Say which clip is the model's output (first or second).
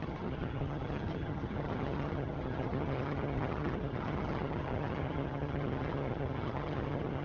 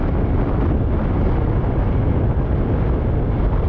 first